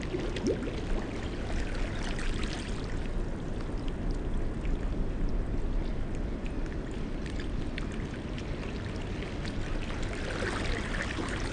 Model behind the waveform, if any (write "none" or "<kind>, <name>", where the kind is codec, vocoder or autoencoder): none